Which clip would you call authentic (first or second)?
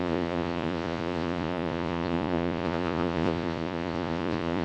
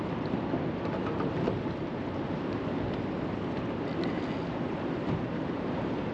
second